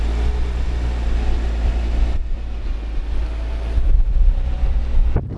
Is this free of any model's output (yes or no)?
yes